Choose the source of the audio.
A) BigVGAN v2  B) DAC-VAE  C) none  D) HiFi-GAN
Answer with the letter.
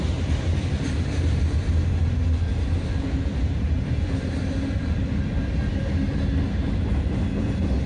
C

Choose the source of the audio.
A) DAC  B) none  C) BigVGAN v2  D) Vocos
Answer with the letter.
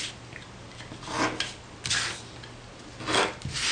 B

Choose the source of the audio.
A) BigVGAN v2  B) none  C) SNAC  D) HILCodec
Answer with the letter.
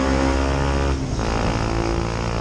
B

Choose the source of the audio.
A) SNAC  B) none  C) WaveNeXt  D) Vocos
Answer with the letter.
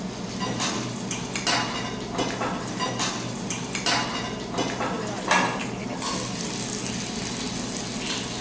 B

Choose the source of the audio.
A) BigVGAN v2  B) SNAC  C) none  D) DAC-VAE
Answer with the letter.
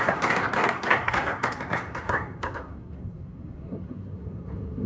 B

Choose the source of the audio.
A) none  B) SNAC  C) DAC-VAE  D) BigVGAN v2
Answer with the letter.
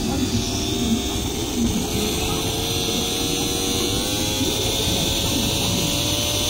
A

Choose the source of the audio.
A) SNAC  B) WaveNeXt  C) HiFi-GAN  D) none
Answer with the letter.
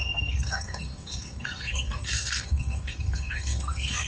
A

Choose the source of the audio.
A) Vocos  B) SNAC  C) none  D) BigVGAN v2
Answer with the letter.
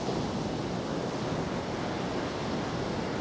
C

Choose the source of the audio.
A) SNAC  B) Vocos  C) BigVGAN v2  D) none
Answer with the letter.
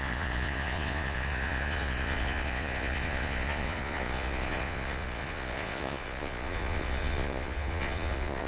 B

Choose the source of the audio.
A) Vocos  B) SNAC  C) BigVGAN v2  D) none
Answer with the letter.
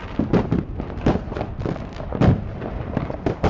D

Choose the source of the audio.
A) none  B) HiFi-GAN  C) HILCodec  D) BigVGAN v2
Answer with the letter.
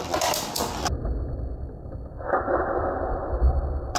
D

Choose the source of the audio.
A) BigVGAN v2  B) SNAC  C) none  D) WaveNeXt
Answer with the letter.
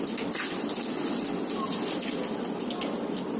C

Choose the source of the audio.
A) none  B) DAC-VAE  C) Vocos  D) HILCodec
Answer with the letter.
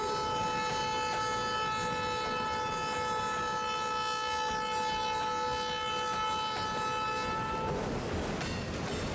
A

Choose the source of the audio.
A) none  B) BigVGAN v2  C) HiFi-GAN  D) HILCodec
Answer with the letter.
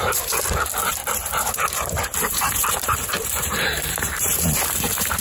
B